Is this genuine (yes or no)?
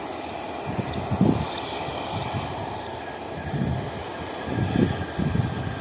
yes